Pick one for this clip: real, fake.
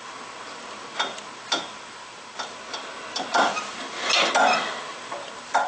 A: real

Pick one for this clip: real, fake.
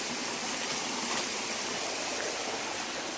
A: real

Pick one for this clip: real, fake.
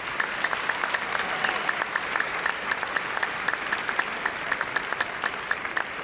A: fake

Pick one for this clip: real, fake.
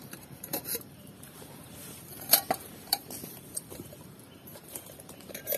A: fake